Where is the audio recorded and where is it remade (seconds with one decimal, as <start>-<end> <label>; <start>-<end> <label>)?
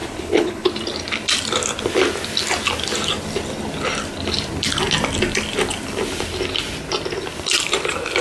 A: 0.0-0.7 remade; 0.7-8.2 recorded